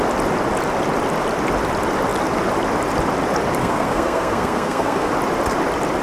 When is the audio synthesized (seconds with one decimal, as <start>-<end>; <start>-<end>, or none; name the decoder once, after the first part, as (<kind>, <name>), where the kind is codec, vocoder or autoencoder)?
3.6-5.1 (codec, SNAC)